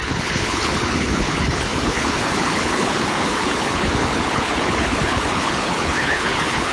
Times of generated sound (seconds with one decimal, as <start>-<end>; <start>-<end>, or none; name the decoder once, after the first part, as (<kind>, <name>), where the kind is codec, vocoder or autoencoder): 0.0-6.7 (codec, HILCodec)